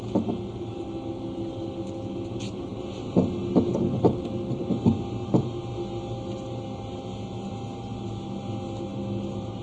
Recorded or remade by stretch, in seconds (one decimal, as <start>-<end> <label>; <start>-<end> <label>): 0.0-9.6 recorded